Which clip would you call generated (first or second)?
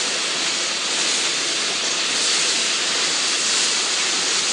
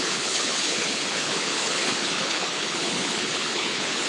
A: second